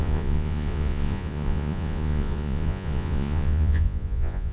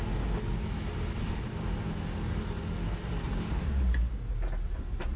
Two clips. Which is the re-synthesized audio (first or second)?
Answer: first